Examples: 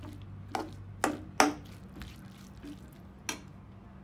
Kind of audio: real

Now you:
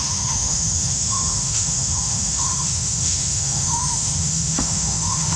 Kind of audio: fake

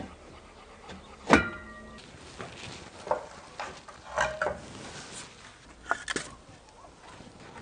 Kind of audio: real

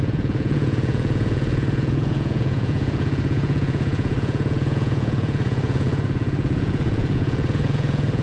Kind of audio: fake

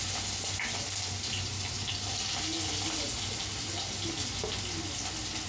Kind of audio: real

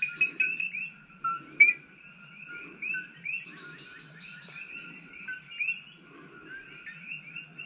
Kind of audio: real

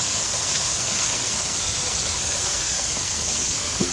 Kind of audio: fake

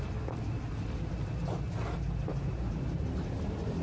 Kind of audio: real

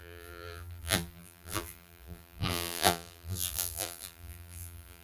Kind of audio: fake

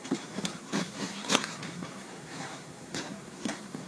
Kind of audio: fake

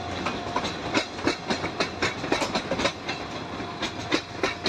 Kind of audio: real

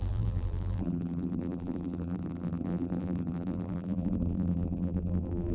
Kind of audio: fake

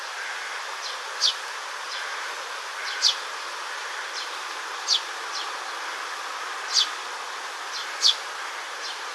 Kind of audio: real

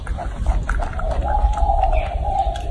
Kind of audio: real